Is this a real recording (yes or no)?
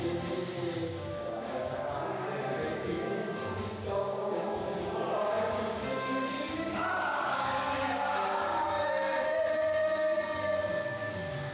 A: no